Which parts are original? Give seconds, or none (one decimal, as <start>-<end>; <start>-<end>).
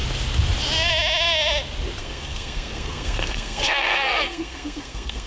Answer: 0.0-2.0